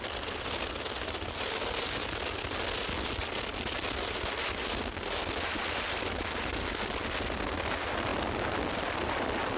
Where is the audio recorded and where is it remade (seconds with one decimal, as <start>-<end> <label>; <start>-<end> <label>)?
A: 0.0-9.6 recorded